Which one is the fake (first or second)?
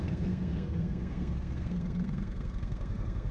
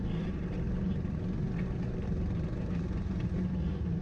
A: first